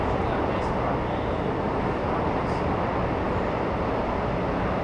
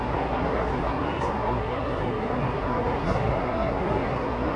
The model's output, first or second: second